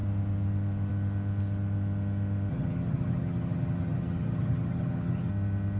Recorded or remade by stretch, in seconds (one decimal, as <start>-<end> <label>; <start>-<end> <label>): 0.0-2.5 recorded; 2.5-5.3 remade; 5.3-5.8 recorded